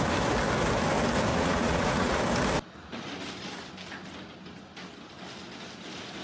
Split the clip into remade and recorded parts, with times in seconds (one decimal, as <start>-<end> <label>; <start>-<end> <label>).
0.0-1.3 recorded; 1.3-2.2 remade; 2.2-6.2 recorded